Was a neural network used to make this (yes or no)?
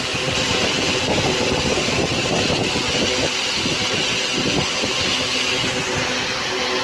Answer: no